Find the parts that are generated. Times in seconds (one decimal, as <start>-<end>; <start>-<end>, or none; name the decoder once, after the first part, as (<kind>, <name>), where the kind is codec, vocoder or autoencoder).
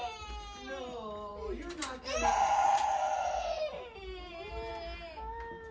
none